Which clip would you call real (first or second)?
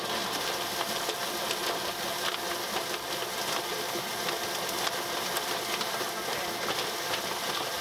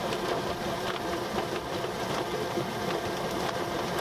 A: first